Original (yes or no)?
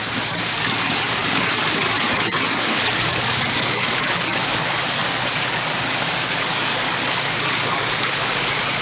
no